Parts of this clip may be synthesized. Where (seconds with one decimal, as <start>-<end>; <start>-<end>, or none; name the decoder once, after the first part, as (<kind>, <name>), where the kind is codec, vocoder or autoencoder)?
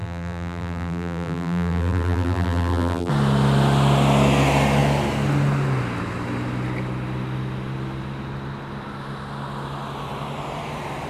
0.0-3.1 (vocoder, BigVGAN v2)